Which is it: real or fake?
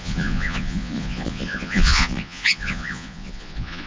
fake